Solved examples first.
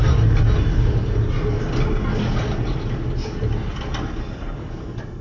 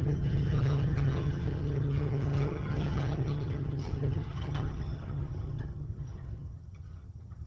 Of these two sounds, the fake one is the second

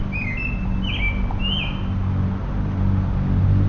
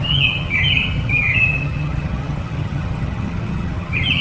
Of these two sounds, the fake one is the second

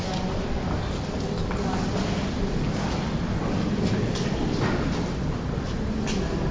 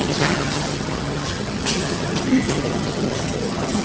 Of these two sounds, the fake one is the second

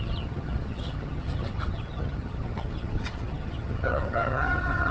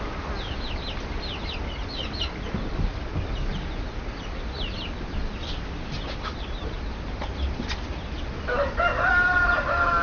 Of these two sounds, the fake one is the first